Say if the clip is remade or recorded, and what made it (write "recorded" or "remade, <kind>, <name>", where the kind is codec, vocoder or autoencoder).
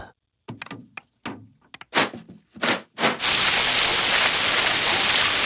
recorded